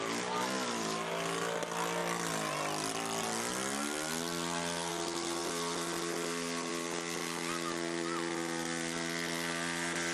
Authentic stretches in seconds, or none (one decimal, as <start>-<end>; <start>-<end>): 0.0-10.1